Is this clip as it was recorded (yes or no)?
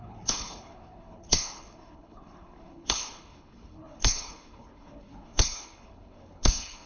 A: no